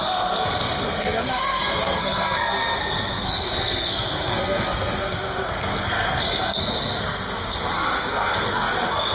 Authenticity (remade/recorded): remade